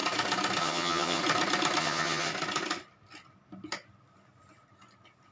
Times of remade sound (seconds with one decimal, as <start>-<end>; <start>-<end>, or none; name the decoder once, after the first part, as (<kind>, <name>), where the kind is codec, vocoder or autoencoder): 0.6-1.2 (vocoder, HiFi-GAN); 1.8-2.3